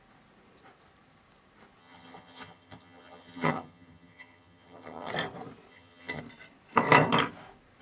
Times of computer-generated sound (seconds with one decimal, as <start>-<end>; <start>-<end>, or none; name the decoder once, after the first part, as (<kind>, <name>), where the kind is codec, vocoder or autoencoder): 1.8-5.1 (vocoder, HiFi-GAN); 5.7-6.2